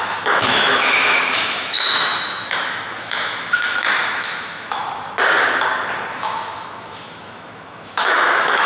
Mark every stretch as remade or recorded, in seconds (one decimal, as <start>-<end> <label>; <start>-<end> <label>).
0.0-4.8 remade; 4.8-6.1 recorded; 6.1-8.7 remade